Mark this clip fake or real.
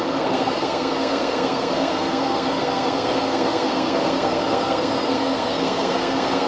fake